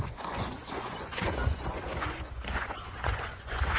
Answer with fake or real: fake